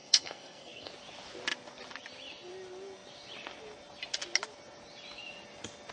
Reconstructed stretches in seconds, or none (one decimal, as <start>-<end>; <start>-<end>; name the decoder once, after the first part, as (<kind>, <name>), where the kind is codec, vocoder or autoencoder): 0.0-0.9 (codec, SNAC)